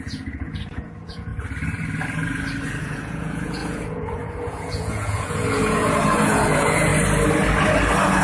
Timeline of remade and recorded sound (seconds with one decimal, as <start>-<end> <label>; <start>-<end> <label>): 0.0-1.3 remade; 1.3-2.8 recorded; 2.8-6.9 remade; 6.9-8.2 recorded